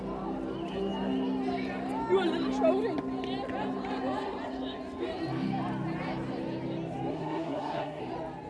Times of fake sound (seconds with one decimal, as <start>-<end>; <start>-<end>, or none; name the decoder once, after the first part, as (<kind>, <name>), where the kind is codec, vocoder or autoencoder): 7.1-8.0 (codec, SNAC)